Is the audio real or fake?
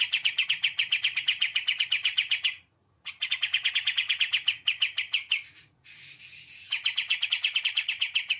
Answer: fake